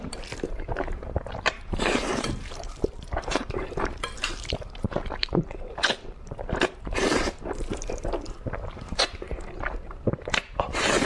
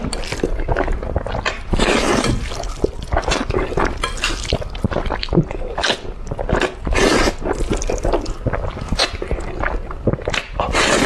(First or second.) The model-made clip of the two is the first